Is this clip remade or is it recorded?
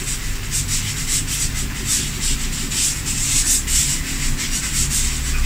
recorded